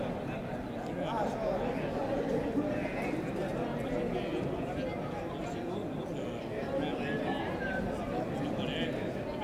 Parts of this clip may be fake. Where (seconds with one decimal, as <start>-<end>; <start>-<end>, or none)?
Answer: none

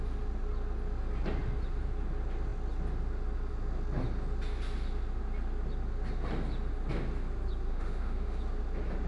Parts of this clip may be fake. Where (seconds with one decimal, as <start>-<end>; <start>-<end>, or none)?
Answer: 7.7-8.4